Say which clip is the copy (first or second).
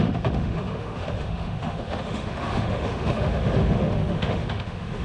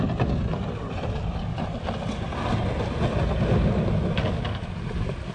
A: first